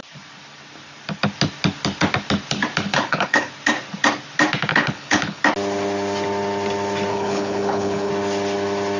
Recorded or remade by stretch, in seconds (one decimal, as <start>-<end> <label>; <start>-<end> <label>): 0.0-2.9 recorded; 2.9-3.5 remade; 3.5-4.7 recorded; 4.7-5.4 remade; 5.4-7.1 recorded; 7.1-8.1 remade; 8.1-9.0 recorded